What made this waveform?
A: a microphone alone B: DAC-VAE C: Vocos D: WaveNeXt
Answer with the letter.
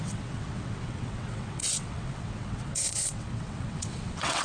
D